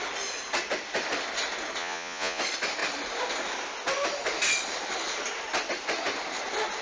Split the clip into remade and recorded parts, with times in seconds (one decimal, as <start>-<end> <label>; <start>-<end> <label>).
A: 0.0-1.8 recorded; 1.8-2.4 remade; 2.4-6.8 recorded